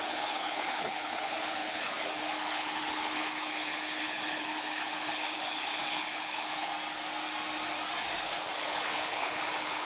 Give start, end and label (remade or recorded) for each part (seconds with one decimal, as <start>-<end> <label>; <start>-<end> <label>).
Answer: 0.0-6.7 remade; 6.7-8.2 recorded; 8.2-9.8 remade